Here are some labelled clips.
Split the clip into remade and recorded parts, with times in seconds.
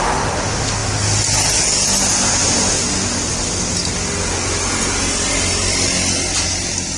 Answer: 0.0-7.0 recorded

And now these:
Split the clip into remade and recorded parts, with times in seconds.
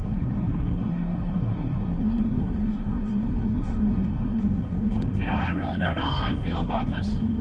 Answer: 0.0-7.4 remade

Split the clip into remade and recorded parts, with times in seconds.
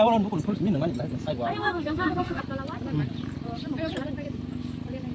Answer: 0.0-1.5 recorded; 1.5-2.4 remade; 2.4-5.1 recorded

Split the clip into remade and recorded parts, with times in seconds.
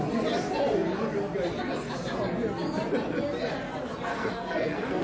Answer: 0.0-4.1 recorded; 4.1-5.0 remade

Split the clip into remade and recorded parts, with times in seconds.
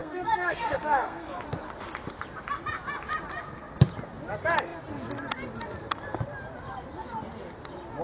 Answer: 0.0-1.3 remade; 1.3-8.0 recorded